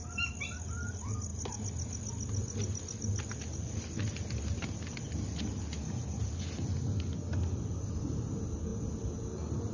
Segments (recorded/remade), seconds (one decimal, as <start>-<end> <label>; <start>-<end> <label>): 0.0-9.7 recorded